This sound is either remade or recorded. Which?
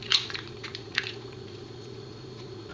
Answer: remade